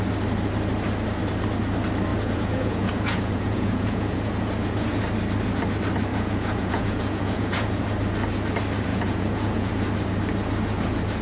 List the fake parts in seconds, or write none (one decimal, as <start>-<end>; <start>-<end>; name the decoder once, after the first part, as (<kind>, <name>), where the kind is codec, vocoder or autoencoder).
2.1-5.0 (vocoder, Vocos); 6.1-7.9; 8.9-9.7

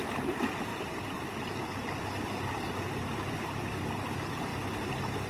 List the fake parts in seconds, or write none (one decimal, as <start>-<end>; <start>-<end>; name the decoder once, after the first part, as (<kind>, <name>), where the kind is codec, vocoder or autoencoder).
2.5-3.8 (vocoder, BigVGAN v2); 4.5-5.3

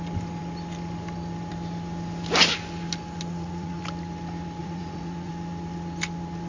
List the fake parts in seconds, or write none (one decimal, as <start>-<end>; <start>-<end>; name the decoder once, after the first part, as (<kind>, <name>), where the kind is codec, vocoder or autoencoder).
3.3-3.8 (vocoder, Vocos); 4.6-5.3

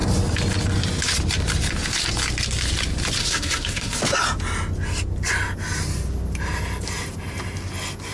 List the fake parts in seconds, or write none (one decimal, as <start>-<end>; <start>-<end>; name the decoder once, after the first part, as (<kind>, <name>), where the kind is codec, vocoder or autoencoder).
3.2-4.0 (codec, SNAC)

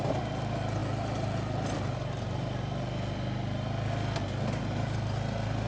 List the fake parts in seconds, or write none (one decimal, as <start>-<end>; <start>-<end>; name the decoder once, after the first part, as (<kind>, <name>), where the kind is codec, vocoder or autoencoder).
none

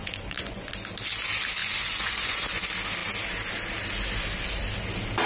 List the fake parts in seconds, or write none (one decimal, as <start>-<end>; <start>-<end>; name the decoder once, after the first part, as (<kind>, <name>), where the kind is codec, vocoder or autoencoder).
0.0-0.7 (vocoder, Vocos); 1.6-2.6

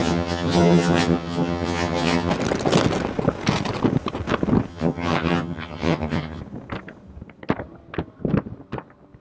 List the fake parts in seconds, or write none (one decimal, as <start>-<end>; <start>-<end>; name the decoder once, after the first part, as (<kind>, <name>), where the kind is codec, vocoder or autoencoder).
0.0-2.3 (vocoder, HiFi-GAN); 4.7-6.4